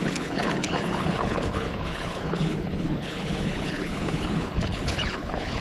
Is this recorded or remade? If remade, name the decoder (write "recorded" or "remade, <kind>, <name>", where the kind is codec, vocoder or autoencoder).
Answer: remade, codec, HILCodec